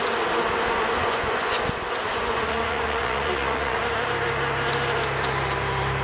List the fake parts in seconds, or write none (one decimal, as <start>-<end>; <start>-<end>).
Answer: 1.0-1.6; 2.1-3.8